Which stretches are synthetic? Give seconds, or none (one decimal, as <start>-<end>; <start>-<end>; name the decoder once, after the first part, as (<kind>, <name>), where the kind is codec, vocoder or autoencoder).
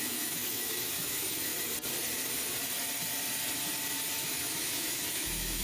0.0-1.5 (autoencoder, DAC-VAE); 4.1-5.6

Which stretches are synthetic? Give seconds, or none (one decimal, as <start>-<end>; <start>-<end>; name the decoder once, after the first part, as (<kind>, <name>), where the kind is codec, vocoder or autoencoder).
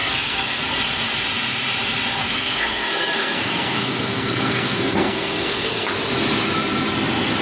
0.0-0.6 (codec, SNAC); 2.2-5.9